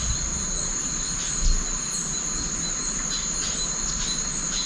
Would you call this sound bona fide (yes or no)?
yes